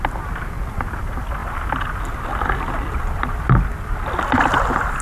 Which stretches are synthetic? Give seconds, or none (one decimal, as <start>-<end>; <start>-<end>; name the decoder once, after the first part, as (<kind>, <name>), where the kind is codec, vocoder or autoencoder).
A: none